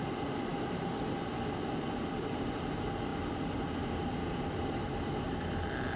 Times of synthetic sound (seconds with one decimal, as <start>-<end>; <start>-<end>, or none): none